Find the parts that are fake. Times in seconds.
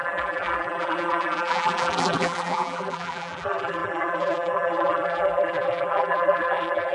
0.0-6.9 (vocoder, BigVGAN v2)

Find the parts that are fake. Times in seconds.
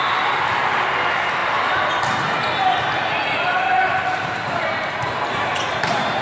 1.4-1.9 (vocoder, BigVGAN v2); 4.1-6.2